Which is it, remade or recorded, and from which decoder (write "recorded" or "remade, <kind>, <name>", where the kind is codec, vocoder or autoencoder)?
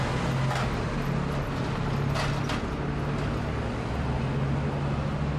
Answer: recorded